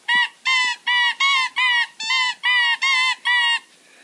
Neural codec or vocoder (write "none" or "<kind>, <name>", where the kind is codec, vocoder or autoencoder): none